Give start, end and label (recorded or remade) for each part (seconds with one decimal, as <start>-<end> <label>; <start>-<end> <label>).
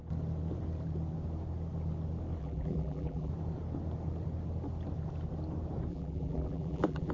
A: 0.0-2.4 recorded; 2.4-3.3 remade; 3.3-5.9 recorded; 5.9-7.1 remade